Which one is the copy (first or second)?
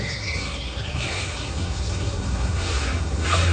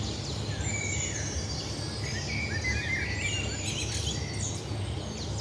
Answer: first